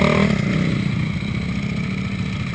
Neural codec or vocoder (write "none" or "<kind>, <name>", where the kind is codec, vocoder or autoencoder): none